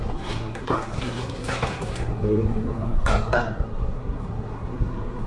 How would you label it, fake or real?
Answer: fake